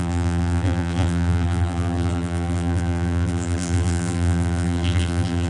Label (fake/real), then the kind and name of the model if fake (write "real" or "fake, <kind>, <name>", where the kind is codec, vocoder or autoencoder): fake, vocoder, BigVGAN v2